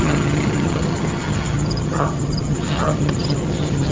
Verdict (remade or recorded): remade